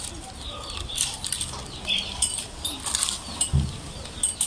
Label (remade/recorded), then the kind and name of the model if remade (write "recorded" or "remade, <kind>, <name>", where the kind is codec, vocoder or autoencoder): recorded